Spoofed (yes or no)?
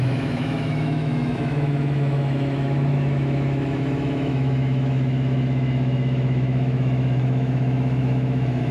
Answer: yes